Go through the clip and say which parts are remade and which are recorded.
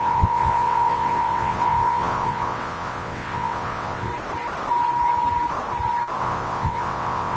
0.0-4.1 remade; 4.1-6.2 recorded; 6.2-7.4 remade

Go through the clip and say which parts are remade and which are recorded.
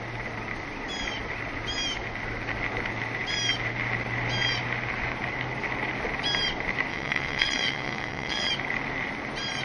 0.0-6.9 recorded; 6.9-8.5 remade; 8.5-9.6 recorded